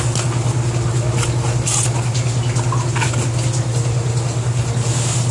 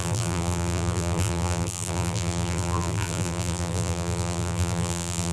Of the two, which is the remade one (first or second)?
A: second